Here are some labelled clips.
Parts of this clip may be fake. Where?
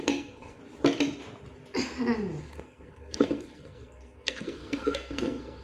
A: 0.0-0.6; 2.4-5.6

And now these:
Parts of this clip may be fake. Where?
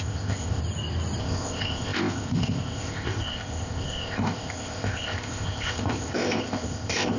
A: 0.0-0.6; 1.2-7.2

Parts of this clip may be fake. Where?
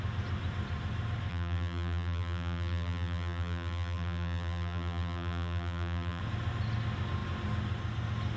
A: 1.3-6.2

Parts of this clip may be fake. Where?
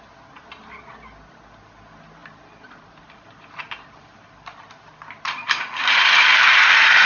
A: 2.2-5.6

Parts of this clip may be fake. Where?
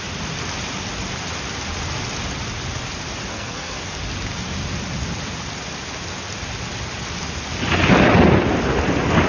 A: 3.3-3.8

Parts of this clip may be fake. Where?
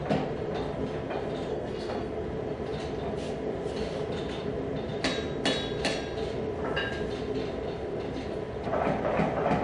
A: 1.5-2.1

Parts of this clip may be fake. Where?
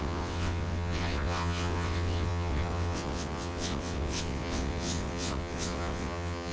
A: 0.0-6.5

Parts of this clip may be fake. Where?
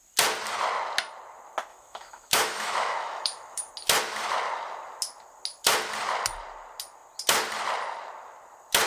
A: 1.7-3.7